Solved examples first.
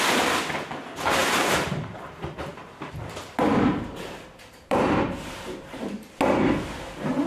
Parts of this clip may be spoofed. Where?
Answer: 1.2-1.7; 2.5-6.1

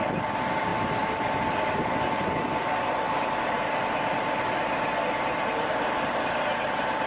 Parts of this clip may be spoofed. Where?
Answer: 0.7-3.7; 5.4-6.5

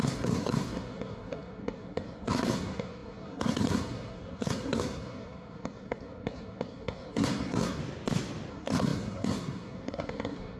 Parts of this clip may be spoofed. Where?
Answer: 0.0-7.8; 8.5-10.6

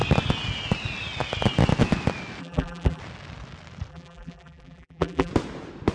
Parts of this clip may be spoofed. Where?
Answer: 2.4-3.0; 3.9-5.3

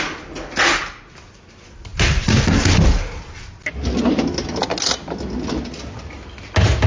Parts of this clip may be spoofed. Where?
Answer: none

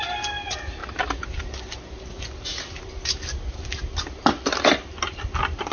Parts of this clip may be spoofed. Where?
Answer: none

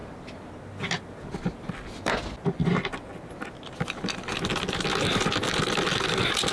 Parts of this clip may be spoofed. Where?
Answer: none

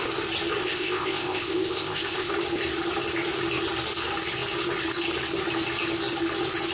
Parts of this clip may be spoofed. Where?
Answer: 0.6-2.3